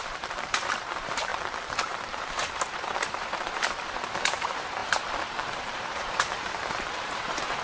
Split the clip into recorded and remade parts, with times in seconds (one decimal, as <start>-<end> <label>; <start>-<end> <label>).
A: 0.0-1.3 remade; 1.3-1.8 recorded; 1.8-7.6 remade